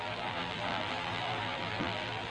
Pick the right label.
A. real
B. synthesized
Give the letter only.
B